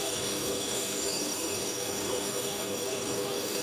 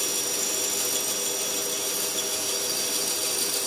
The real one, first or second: second